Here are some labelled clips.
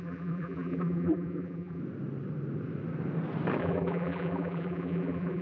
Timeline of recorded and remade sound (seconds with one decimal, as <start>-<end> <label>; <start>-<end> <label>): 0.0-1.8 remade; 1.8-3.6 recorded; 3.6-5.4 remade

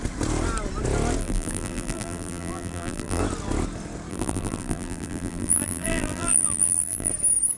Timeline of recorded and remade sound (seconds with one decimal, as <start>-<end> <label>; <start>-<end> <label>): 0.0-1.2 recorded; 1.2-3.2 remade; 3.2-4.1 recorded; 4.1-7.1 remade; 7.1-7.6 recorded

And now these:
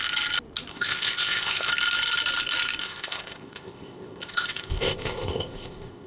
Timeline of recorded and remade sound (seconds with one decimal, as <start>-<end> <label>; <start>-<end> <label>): 0.0-0.7 recorded; 0.7-1.7 remade; 1.7-2.8 recorded; 2.8-6.1 remade

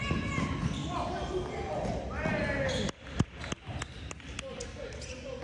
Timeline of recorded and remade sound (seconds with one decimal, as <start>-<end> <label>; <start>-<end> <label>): 0.0-5.4 recorded

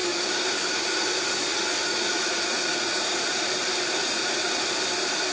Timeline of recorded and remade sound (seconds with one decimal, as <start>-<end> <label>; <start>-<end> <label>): 0.0-1.9 recorded; 1.9-3.4 remade; 3.4-4.0 recorded; 4.0-4.5 remade; 4.5-5.3 recorded